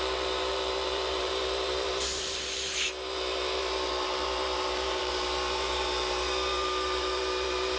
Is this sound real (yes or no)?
no